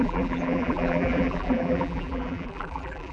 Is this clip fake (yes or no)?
yes